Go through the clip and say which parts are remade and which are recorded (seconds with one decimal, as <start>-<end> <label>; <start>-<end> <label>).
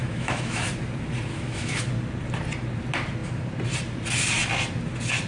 0.0-0.6 remade; 0.6-1.3 recorded; 1.3-1.8 remade; 1.8-5.3 recorded